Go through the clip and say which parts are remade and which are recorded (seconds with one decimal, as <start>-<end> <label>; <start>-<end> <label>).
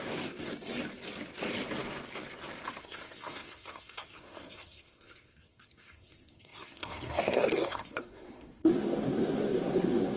0.0-0.5 remade; 0.5-2.8 recorded; 2.8-10.2 remade